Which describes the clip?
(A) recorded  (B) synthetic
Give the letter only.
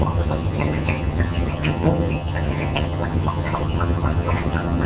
B